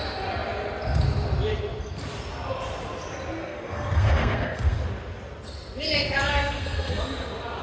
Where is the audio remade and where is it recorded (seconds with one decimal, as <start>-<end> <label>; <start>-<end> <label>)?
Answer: 0.0-3.4 recorded; 3.4-4.8 remade; 4.8-6.3 recorded; 6.3-7.0 remade; 7.0-7.6 recorded